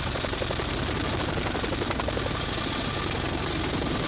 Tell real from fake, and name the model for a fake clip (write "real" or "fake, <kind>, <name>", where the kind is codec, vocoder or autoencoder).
fake, vocoder, BigVGAN v2